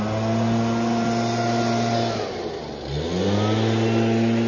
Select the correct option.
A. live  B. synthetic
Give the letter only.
A